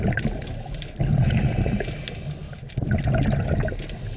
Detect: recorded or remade recorded